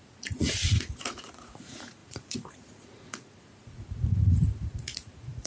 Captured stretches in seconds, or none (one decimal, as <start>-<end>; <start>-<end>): none